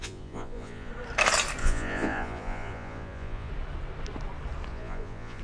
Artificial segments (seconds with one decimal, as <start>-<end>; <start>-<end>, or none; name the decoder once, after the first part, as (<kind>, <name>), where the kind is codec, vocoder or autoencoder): 0.0-0.9 (vocoder, Vocos); 1.6-3.5; 4.7-5.4